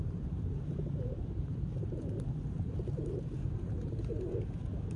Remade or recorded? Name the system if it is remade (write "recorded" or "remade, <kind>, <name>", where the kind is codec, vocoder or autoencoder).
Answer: remade, vocoder, BigVGAN v2